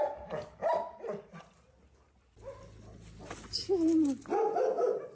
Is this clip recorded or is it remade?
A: recorded